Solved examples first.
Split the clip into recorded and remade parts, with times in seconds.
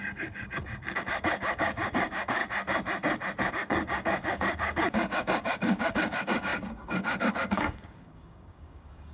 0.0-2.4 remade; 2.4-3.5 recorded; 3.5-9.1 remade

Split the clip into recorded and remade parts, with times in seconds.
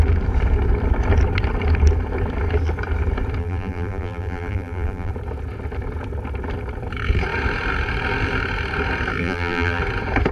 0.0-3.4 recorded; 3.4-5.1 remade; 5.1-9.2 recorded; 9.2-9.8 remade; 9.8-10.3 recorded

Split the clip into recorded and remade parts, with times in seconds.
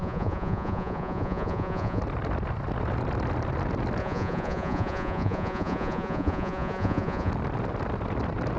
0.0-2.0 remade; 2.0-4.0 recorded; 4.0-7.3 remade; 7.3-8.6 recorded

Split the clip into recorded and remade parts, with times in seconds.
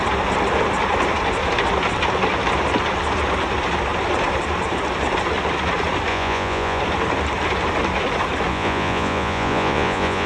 0.0-6.1 recorded; 6.1-6.8 remade; 6.8-8.5 recorded; 8.5-10.3 remade